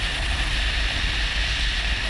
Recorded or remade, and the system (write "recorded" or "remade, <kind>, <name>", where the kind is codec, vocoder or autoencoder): recorded